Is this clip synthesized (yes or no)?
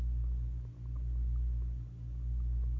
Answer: no